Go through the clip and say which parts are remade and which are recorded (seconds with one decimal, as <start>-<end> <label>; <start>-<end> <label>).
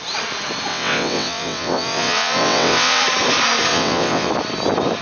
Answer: 0.0-0.7 recorded; 0.7-3.0 remade; 3.0-3.7 recorded; 3.7-4.3 remade; 4.3-5.0 recorded